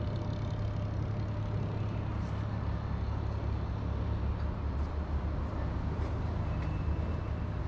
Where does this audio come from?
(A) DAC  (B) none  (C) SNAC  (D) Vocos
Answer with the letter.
B